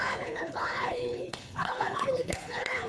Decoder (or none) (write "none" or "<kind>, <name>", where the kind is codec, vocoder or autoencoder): codec, HILCodec